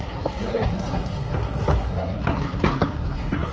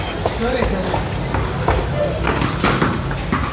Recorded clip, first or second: second